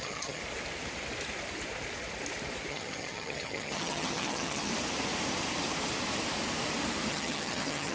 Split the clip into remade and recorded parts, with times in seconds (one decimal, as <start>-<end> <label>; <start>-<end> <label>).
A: 0.0-0.4 remade; 0.4-2.7 recorded; 2.7-4.7 remade; 4.7-7.1 recorded; 7.1-7.9 remade

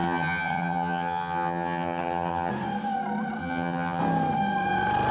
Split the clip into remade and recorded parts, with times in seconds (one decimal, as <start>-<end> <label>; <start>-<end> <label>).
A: 0.0-2.5 remade; 2.5-3.4 recorded; 3.4-4.0 remade; 4.0-5.1 recorded